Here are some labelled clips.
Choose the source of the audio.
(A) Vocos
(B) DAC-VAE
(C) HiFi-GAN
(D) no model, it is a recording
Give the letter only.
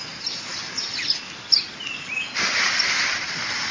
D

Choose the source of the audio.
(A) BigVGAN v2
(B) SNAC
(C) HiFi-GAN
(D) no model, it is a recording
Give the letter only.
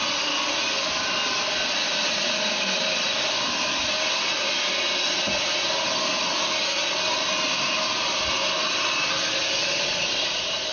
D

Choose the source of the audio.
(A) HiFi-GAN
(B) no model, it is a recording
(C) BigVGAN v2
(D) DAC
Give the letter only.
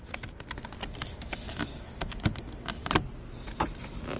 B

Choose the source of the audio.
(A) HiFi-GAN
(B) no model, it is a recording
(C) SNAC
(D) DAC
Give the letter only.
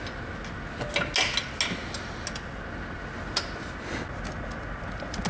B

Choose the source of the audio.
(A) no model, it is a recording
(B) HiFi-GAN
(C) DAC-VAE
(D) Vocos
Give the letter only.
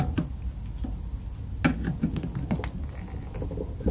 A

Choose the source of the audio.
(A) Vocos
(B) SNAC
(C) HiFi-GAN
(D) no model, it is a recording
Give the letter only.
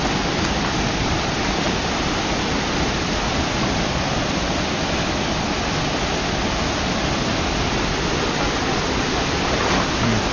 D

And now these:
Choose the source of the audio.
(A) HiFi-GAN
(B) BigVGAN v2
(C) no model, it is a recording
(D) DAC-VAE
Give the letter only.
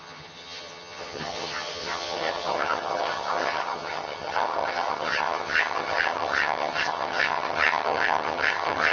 A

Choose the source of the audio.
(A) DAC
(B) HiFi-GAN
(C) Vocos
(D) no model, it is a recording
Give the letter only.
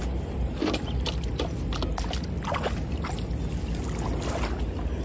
D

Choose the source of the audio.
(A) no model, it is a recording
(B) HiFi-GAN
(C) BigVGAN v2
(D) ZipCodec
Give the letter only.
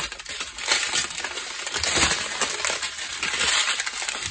A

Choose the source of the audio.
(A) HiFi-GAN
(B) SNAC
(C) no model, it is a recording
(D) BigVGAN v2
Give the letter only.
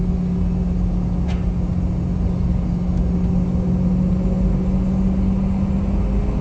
C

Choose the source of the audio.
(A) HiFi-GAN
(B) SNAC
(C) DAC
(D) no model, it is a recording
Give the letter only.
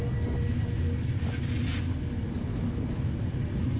D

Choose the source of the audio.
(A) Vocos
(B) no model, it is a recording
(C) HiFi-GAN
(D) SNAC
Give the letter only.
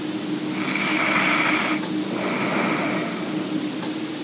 B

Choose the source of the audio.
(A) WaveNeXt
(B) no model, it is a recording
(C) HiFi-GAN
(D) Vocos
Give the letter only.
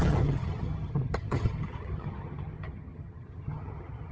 C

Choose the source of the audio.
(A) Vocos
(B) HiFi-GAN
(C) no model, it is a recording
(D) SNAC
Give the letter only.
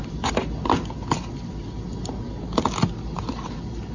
C